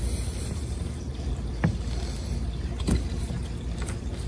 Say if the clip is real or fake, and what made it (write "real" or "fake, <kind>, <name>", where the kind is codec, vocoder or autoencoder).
real